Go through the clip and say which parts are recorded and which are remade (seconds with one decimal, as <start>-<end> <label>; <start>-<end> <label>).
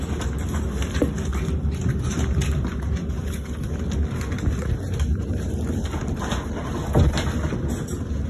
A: 0.0-8.3 recorded